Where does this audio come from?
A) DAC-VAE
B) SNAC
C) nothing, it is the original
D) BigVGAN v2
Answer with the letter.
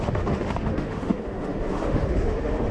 A